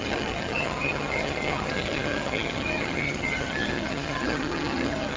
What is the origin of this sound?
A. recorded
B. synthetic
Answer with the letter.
B